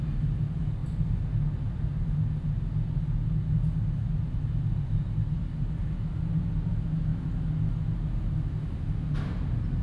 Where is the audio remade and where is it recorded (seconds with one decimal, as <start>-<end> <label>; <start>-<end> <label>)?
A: 0.0-9.8 recorded